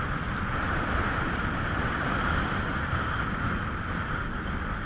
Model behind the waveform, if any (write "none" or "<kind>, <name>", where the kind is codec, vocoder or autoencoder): none